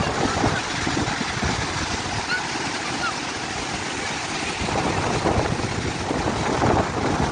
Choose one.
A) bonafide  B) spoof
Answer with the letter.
A